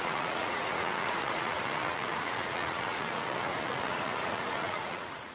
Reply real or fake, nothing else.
fake